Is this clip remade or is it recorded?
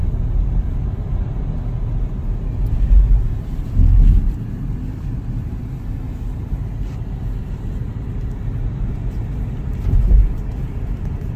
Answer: recorded